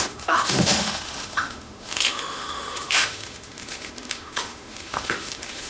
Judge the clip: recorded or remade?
remade